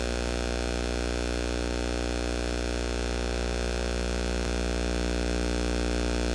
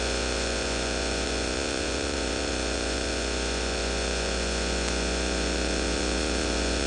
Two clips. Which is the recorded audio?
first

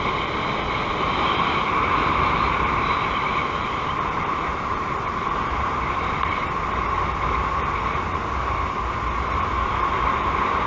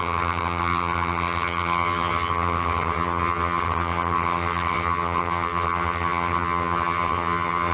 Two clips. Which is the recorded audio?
first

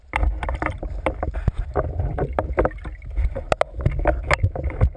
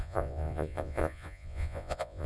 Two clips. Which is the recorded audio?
first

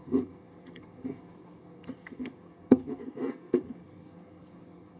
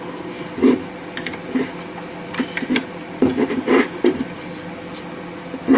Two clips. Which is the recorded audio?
second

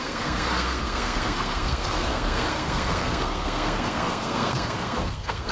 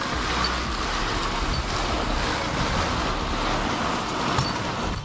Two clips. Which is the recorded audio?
second